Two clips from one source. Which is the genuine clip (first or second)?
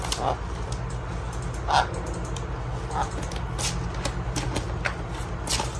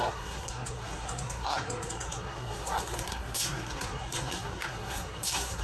first